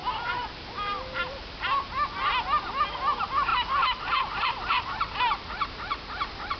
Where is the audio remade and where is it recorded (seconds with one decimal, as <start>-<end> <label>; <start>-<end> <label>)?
0.0-6.6 recorded